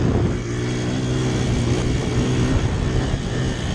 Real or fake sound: real